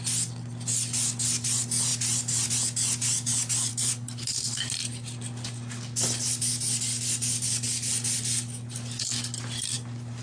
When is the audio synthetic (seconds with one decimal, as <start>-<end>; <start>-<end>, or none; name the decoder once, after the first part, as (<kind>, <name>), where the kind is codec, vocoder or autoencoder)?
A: 3.7-4.6 (codec, HILCodec)